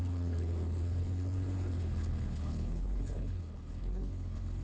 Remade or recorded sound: remade